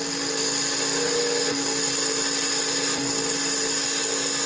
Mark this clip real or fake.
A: real